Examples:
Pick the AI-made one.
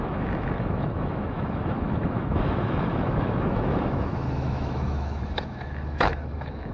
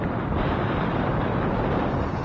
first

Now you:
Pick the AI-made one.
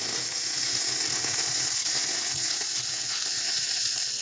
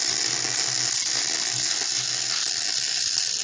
first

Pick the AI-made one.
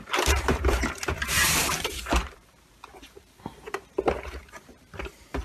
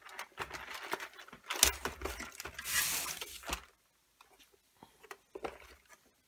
first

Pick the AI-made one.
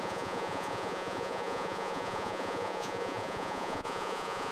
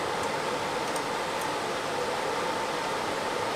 first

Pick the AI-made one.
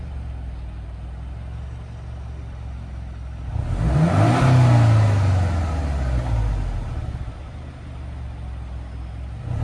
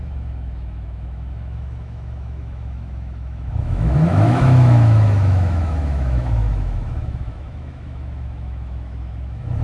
second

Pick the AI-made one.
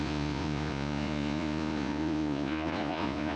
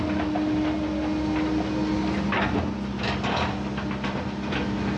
first